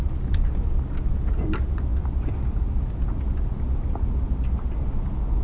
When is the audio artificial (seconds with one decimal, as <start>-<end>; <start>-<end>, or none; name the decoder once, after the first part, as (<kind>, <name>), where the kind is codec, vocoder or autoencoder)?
none